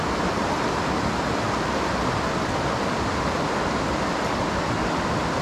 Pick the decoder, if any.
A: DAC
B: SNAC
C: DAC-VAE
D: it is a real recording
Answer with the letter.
D